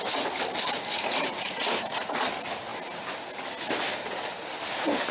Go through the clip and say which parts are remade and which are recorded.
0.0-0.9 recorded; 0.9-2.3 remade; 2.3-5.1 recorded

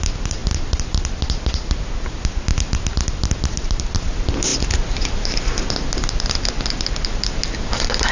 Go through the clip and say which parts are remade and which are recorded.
0.0-8.1 recorded

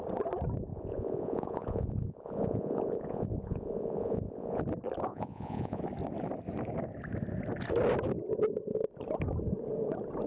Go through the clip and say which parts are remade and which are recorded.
0.0-0.7 recorded; 0.7-4.6 remade; 4.6-5.1 recorded; 5.1-5.8 remade; 5.8-10.3 recorded